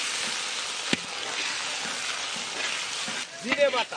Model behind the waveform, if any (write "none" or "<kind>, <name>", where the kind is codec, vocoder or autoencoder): none